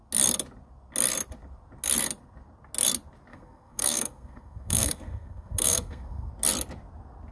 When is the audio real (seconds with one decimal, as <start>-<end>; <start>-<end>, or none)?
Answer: 0.0-3.3; 6.3-7.3